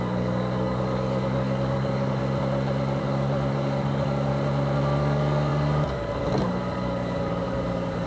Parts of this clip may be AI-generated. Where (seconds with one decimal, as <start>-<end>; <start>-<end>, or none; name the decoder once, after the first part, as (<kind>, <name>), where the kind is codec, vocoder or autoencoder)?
0.0-2.2 (codec, DAC); 3.0-4.3; 5.0-8.1